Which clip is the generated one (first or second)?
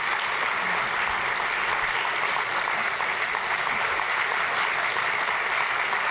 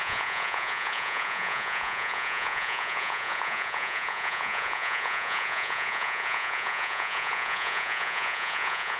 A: second